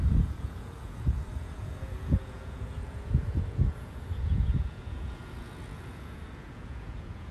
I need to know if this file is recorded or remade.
remade